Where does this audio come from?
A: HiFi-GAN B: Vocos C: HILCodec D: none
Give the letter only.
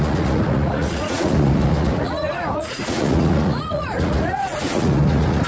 B